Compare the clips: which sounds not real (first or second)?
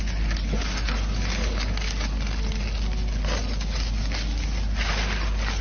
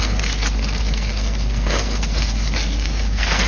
second